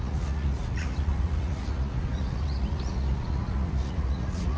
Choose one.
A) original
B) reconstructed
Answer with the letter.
B